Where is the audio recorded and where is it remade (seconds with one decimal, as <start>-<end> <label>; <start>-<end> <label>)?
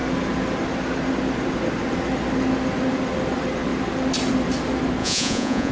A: 0.0-5.0 recorded; 5.0-5.7 remade